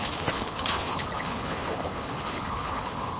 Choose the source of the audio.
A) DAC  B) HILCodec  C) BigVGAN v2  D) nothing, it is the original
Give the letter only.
B